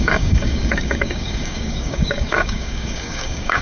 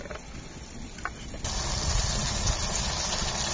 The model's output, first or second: first